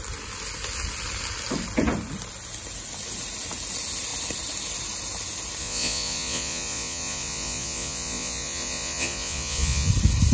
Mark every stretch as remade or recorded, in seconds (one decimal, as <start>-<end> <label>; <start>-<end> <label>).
0.0-5.6 recorded; 5.6-9.9 remade; 9.9-10.3 recorded